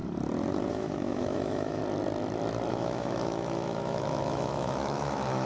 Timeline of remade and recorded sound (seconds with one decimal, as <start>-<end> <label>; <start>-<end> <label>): 0.0-0.7 recorded; 0.7-1.8 remade; 1.8-2.7 recorded; 2.7-5.5 remade